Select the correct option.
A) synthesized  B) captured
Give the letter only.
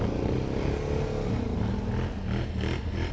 B